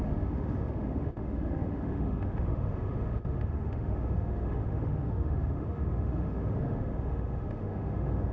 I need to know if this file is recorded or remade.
remade